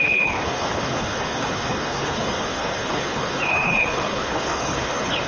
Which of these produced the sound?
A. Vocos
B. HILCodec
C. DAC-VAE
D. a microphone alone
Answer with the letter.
B